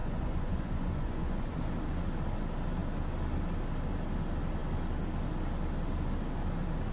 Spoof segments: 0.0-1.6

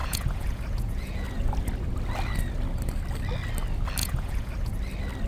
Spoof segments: 0.0-1.5; 4.0-4.7

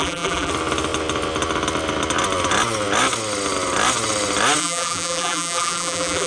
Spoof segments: 0.0-0.5; 4.6-6.3

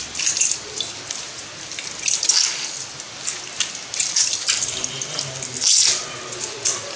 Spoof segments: none

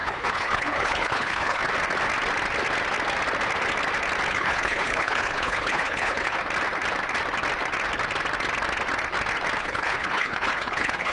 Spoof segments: 0.0-1.6; 4.3-6.4; 9.6-11.1

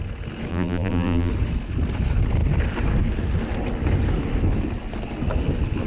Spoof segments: 0.5-1.3